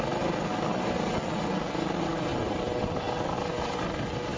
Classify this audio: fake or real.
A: real